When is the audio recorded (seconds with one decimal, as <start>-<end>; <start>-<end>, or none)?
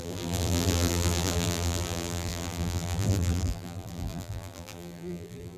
none